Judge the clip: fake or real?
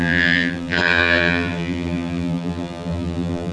fake